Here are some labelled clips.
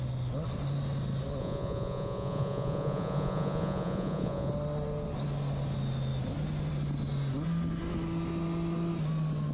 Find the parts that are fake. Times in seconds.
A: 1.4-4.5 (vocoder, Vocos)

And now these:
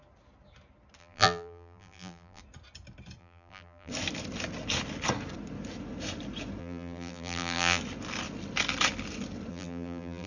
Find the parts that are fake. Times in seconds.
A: 1.0-2.4 (vocoder, BigVGAN v2); 3.2-3.9; 6.6-7.8; 9.5-10.3